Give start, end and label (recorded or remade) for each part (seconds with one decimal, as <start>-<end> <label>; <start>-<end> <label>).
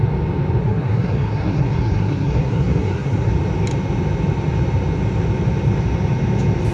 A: 0.0-0.6 recorded; 0.6-3.3 remade; 3.3-6.7 recorded